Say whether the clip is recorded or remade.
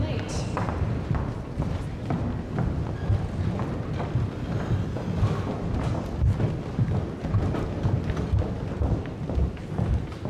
recorded